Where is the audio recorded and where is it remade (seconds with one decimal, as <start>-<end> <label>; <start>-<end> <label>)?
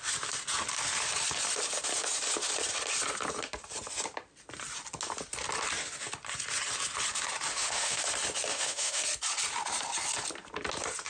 0.0-7.5 recorded; 7.5-8.0 remade; 8.0-8.5 recorded; 8.5-9.0 remade; 9.0-11.1 recorded